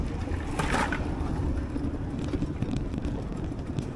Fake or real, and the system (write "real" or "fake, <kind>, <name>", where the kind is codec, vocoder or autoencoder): real